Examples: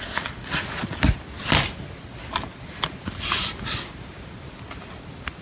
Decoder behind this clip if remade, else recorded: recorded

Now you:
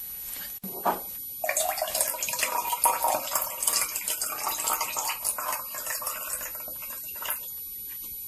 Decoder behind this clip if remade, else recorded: recorded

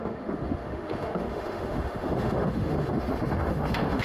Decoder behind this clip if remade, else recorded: remade, autoencoder, DAC-VAE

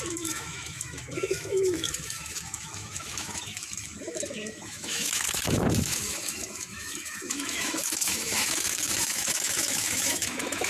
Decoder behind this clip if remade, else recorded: remade, autoencoder, DAC-VAE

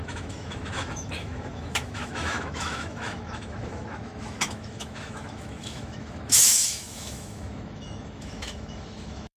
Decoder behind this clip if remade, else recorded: remade, autoencoder, DAC-VAE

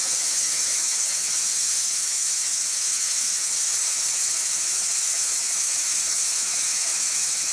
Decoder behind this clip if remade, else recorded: remade, autoencoder, DAC-VAE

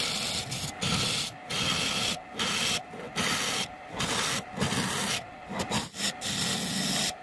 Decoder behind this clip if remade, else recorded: recorded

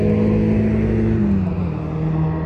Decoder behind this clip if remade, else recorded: recorded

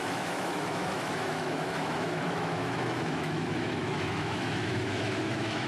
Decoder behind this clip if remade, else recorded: remade, autoencoder, DAC-VAE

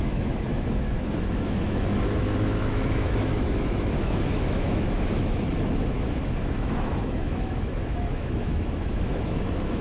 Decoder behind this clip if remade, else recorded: remade, autoencoder, DAC-VAE